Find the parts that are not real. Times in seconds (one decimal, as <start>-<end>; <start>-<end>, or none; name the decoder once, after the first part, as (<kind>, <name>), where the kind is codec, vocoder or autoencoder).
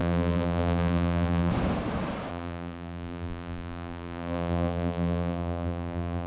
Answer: 0.0-1.5 (vocoder, BigVGAN v2); 2.3-6.3